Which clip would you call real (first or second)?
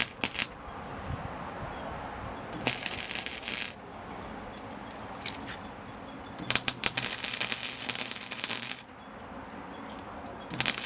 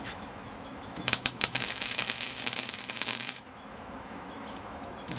first